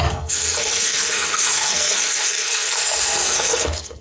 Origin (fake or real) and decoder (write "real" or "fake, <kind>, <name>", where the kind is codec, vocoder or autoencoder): fake, codec, SNAC